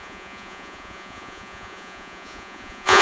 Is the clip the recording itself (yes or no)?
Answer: no